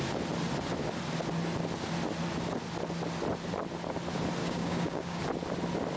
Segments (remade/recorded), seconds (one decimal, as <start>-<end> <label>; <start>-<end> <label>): 0.0-4.4 recorded; 4.4-5.2 remade; 5.2-6.0 recorded